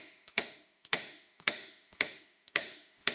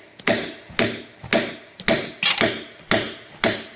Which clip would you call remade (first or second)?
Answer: first